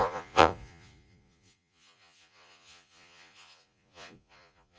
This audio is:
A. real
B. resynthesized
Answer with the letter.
B